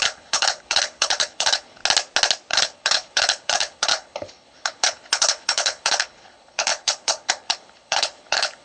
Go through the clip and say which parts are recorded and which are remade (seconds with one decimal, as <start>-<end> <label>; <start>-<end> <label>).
0.0-1.8 remade; 1.8-2.5 recorded; 2.5-8.6 remade